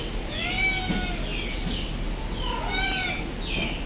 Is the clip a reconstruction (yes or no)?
no